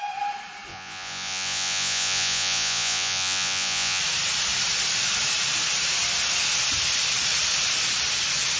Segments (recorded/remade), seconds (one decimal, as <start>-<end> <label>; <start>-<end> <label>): 0.0-0.7 recorded; 0.7-4.0 remade; 4.0-8.6 recorded